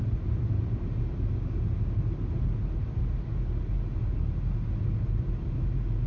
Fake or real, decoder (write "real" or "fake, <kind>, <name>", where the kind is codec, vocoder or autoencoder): real